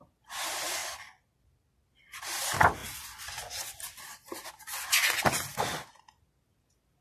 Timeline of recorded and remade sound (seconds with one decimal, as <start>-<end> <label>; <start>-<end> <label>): 0.0-7.0 recorded